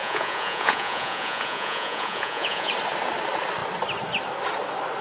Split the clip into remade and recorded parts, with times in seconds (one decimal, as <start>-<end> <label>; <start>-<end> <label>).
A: 0.0-2.7 remade; 2.7-5.0 recorded

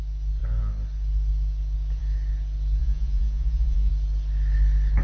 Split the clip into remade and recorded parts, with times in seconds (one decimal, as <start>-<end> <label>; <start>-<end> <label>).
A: 0.0-2.8 recorded; 2.8-3.9 remade; 3.9-5.0 recorded

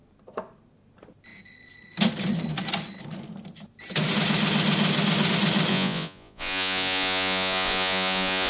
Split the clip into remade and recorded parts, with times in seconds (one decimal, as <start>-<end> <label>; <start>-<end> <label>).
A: 0.0-5.7 recorded; 5.7-8.5 remade

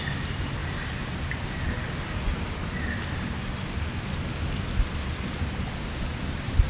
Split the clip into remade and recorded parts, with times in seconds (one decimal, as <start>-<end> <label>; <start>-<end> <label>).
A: 0.0-6.7 recorded

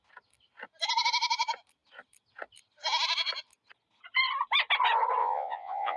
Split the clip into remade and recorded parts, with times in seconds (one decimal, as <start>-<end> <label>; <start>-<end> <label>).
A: 0.0-5.2 recorded; 5.2-6.0 remade